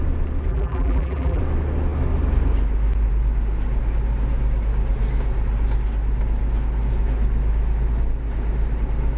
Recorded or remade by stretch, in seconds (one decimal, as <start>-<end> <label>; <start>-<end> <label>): 0.0-0.5 recorded; 0.5-1.4 remade; 1.4-9.2 recorded